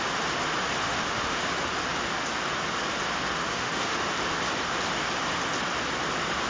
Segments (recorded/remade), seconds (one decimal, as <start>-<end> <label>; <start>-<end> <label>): 0.0-0.8 recorded; 0.8-1.4 remade; 1.4-3.5 recorded; 3.5-4.0 remade; 4.0-6.5 recorded